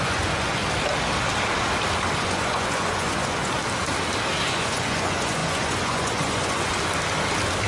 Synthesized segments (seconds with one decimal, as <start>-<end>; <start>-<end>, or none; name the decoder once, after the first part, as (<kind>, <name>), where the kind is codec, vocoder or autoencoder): 0.0-0.6 (vocoder, Vocos); 2.2-3.5; 4.4-6.7